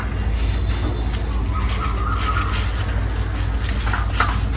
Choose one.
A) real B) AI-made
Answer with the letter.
A